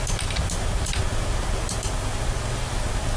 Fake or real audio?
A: real